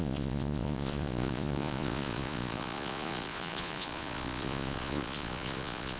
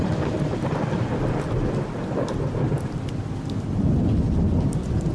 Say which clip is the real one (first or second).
second